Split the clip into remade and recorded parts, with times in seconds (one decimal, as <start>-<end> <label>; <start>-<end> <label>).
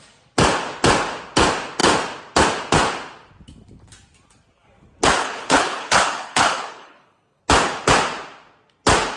0.0-5.2 recorded; 5.2-7.4 remade; 7.4-9.2 recorded